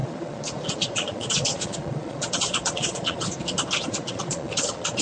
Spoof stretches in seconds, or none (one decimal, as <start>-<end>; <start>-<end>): 0.0-3.3; 3.9-5.0